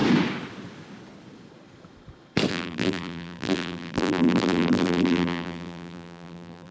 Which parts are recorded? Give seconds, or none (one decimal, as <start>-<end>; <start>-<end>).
0.0-2.5